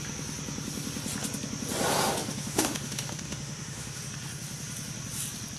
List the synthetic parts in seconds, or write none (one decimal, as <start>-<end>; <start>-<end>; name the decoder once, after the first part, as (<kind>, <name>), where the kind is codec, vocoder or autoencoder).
2.2-4.0 (autoencoder, DAC-VAE)